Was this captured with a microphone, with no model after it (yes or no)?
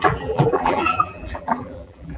no